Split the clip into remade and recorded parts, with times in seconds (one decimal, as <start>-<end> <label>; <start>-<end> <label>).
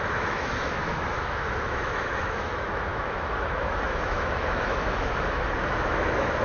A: 0.0-6.4 remade